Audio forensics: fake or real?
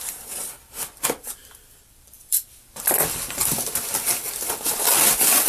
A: fake